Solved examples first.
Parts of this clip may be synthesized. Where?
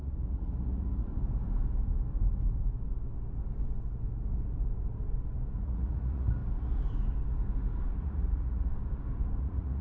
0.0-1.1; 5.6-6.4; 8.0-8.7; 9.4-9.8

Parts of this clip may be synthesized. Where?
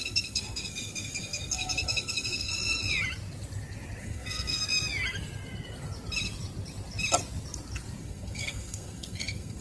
0.0-2.5; 4.0-4.6; 8.0-9.6